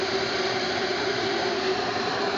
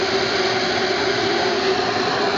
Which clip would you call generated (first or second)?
first